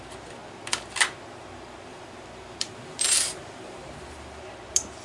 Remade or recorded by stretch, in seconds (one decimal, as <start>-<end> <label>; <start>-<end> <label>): 0.0-1.9 recorded; 1.9-4.4 remade; 4.4-5.0 recorded